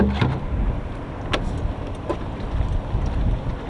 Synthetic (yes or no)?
no